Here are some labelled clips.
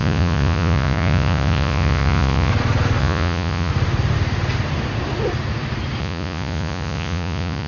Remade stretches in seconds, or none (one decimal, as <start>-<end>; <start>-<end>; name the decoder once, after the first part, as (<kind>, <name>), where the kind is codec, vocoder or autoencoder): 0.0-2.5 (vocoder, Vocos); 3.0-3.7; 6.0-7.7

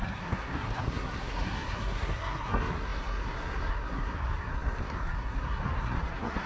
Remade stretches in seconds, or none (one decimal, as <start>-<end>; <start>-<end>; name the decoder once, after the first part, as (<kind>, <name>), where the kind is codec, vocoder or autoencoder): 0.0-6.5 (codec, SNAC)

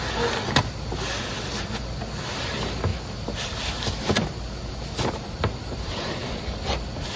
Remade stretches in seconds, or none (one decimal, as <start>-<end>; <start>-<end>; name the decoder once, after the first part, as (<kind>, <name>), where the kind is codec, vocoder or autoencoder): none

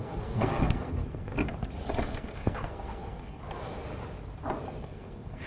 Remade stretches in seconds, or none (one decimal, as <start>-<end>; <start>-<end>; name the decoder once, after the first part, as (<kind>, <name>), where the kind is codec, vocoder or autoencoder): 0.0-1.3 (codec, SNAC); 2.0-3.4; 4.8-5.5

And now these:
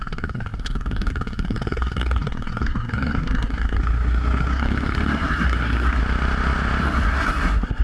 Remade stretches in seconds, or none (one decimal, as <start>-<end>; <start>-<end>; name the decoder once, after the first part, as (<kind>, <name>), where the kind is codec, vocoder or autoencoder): 0.0-6.0 (codec, SNAC); 6.8-7.8

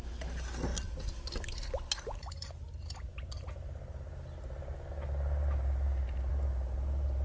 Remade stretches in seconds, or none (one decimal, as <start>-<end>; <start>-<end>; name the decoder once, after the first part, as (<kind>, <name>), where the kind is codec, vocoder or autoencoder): none

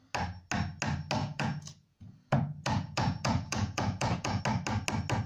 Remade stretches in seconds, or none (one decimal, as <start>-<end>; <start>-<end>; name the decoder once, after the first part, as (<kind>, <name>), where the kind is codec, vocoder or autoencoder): 1.2-4.4 (vocoder, Vocos)

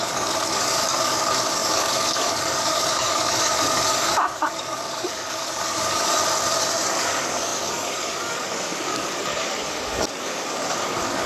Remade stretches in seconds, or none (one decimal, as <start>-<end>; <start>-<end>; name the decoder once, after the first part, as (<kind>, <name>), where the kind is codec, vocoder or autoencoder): 0.0-6.2 (codec, DAC); 6.9-11.3